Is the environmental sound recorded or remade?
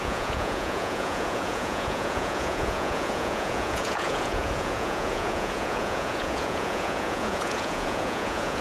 remade